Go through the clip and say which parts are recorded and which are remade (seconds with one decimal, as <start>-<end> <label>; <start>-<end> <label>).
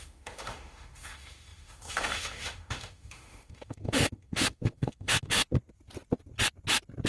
0.0-5.4 remade; 5.4-7.1 recorded